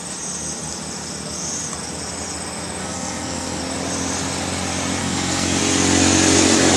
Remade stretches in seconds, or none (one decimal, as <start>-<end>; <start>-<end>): 2.8-3.6; 5.0-5.6